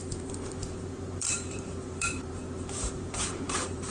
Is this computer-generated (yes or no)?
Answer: yes